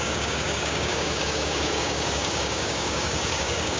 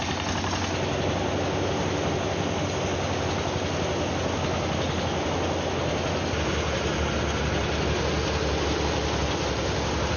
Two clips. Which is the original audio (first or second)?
second